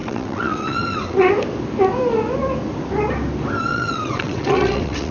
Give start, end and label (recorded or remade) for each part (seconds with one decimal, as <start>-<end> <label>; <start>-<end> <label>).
0.0-1.3 remade; 1.3-3.7 recorded; 3.7-5.1 remade